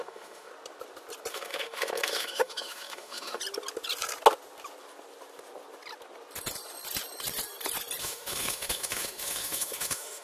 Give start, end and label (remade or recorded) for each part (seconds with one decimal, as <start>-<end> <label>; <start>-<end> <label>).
0.0-0.5 remade; 0.5-1.3 recorded; 1.3-3.4 remade; 3.4-8.0 recorded; 8.0-10.2 remade